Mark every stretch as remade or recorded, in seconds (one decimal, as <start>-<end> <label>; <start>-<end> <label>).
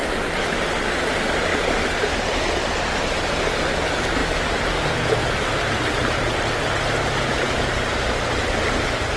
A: 0.0-1.5 recorded; 1.5-3.6 remade; 3.6-9.2 recorded